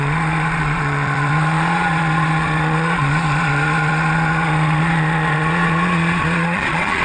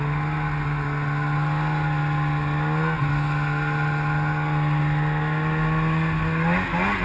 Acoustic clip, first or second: second